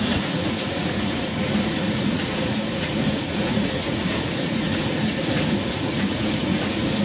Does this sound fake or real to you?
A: fake